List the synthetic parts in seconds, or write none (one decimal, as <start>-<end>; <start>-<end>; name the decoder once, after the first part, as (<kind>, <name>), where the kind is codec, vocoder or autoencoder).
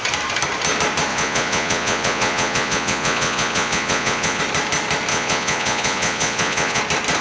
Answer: 1.1-4.4 (vocoder, Vocos); 5.1-6.8